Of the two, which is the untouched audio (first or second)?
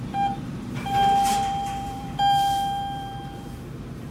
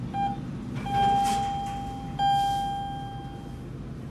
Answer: second